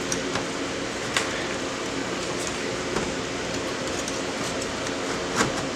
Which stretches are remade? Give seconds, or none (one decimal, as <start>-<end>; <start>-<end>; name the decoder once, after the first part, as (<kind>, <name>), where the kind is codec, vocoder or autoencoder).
2.0-2.8 (codec, DAC)